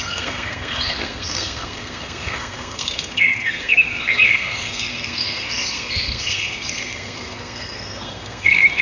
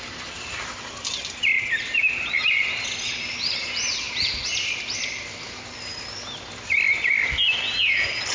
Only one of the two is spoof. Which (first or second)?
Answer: first